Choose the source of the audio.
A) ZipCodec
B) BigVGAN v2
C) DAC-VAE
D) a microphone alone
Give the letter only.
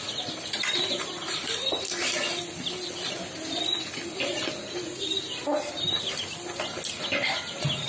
D